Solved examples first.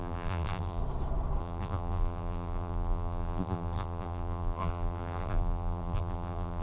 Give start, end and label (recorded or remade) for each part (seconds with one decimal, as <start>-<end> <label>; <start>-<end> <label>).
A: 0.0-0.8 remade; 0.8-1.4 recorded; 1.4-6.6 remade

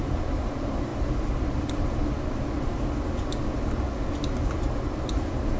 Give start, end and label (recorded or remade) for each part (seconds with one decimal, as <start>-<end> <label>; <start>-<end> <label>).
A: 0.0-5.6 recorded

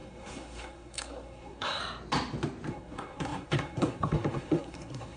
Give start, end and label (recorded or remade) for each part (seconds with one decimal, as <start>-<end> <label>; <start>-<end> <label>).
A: 0.0-1.8 remade; 1.8-2.7 recorded; 2.7-5.2 remade